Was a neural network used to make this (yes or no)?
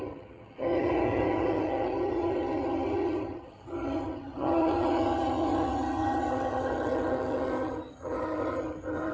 yes